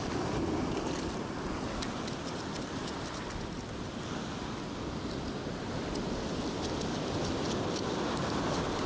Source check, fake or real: real